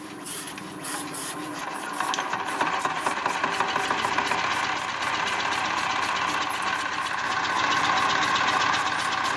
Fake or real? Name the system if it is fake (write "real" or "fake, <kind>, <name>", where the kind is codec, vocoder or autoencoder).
real